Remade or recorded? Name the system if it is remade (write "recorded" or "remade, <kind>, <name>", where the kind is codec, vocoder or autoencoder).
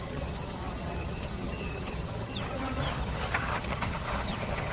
remade, vocoder, HiFi-GAN